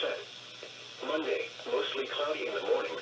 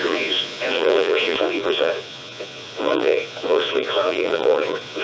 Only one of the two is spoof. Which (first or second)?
second